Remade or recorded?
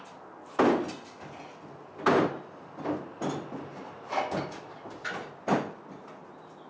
recorded